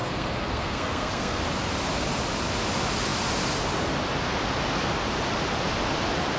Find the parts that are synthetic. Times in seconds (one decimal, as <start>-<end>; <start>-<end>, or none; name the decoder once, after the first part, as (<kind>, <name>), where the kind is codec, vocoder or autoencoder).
0.0-1.4 (codec, SNAC)